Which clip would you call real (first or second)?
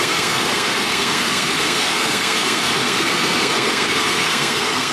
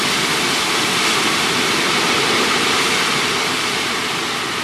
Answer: second